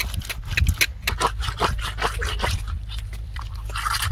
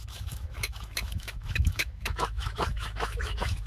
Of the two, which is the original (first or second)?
first